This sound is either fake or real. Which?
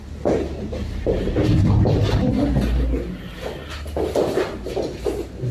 real